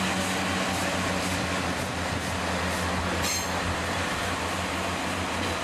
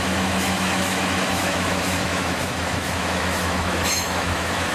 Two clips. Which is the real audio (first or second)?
first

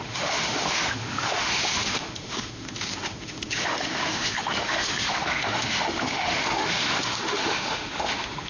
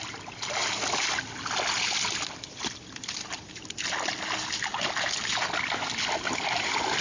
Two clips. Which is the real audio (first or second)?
second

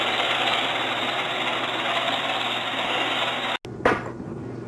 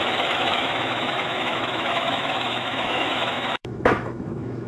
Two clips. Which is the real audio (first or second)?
first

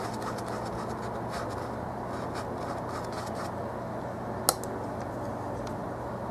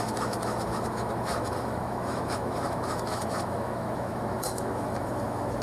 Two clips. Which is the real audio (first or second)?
first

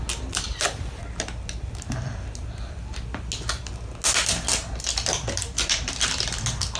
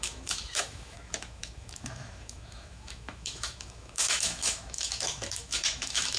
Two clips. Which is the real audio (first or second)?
first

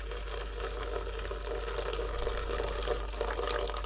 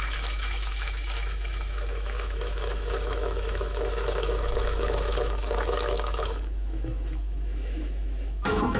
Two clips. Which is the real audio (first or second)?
first